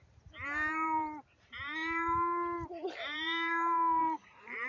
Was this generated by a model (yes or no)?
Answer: yes